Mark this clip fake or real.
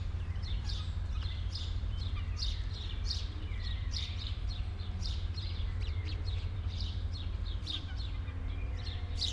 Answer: fake